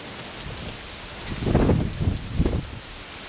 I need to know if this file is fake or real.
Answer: real